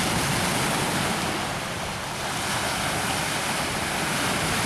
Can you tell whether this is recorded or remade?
recorded